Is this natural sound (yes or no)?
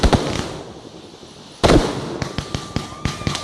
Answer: yes